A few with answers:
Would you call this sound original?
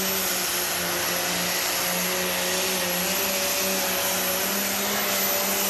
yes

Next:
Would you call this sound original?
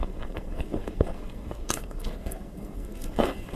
no